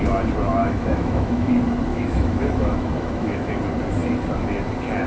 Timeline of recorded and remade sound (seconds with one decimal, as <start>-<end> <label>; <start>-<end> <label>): 0.0-0.6 recorded; 0.6-1.5 remade; 1.5-1.9 recorded; 1.9-3.5 remade; 3.5-5.1 recorded